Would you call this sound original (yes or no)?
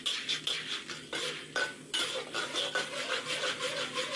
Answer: yes